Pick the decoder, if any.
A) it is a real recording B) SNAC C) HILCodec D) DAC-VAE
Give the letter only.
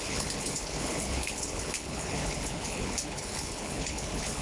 C